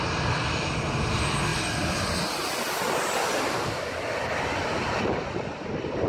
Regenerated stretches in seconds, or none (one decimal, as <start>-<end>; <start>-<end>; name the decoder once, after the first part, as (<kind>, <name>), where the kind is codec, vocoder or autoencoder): none